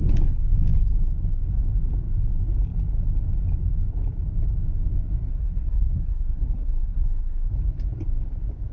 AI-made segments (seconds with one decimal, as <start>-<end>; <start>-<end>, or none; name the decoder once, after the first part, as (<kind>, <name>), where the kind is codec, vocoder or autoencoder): 5.3-7.5 (codec, SNAC)